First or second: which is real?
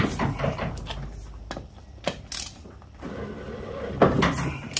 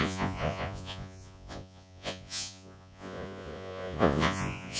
first